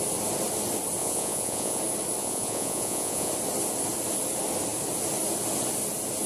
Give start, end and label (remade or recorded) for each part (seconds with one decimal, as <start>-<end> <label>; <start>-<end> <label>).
0.0-1.0 recorded; 1.0-1.8 remade; 1.8-2.2 recorded; 2.2-3.3 remade; 3.3-6.3 recorded